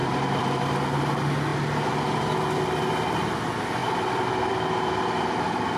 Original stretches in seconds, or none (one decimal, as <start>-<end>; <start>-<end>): 0.6-3.8; 5.0-5.8